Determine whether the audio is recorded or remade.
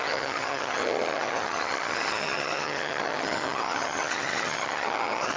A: remade